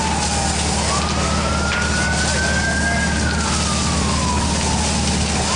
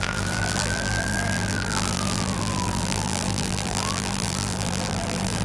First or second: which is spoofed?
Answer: second